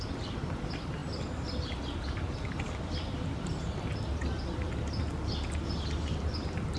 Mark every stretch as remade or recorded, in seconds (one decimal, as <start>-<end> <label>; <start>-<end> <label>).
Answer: 0.0-6.8 recorded

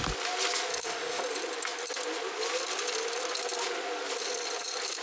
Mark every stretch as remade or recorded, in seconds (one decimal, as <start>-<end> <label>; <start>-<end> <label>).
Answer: 0.0-0.7 recorded; 0.7-1.2 remade; 1.2-5.0 recorded

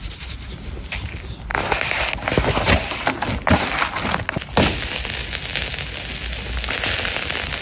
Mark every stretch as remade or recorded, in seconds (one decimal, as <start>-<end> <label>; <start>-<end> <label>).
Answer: 0.0-7.6 recorded

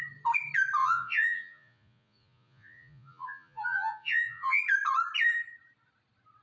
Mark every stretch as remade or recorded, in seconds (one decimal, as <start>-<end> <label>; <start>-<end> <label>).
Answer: 0.0-0.8 recorded; 0.8-4.6 remade; 4.6-6.4 recorded

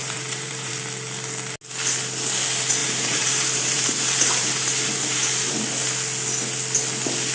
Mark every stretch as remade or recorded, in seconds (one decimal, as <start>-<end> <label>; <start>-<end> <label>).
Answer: 0.0-0.7 remade; 0.7-2.8 recorded; 2.8-5.6 remade; 5.6-7.3 recorded